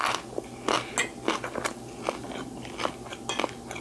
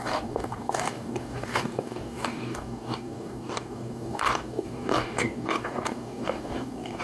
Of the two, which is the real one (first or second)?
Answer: first